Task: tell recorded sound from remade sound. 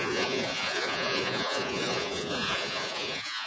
remade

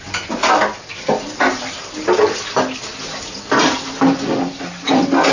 recorded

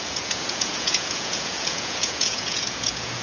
remade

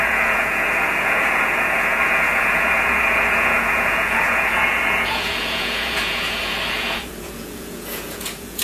remade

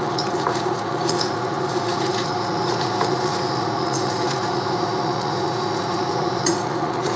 remade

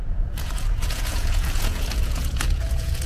remade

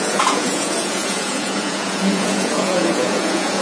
remade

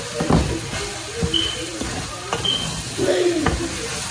recorded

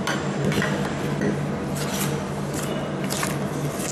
recorded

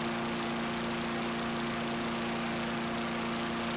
recorded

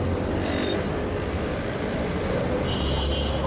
recorded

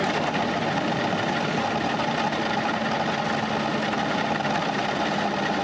recorded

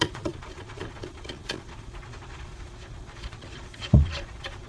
remade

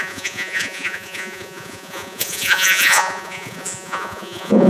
remade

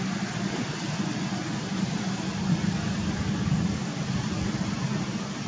recorded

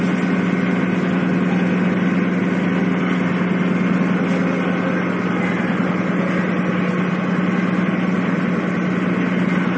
recorded